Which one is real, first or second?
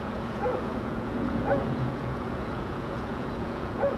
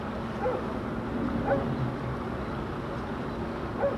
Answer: second